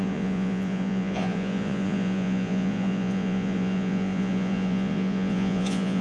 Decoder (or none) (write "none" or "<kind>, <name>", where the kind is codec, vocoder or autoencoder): vocoder, Vocos